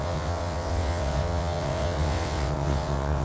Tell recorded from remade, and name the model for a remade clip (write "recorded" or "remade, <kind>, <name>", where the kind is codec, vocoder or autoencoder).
remade, vocoder, WaveNeXt